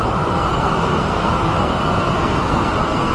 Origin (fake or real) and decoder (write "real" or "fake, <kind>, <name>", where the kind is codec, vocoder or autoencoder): fake, codec, SNAC